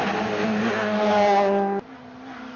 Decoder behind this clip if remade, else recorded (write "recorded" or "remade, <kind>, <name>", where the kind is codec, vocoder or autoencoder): recorded